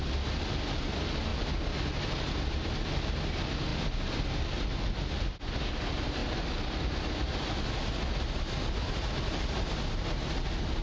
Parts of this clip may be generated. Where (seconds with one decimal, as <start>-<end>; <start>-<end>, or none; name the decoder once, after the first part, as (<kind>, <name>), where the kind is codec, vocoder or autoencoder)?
1.3-1.9 (vocoder, BigVGAN v2)